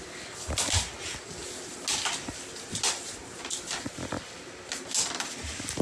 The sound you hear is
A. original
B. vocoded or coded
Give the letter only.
A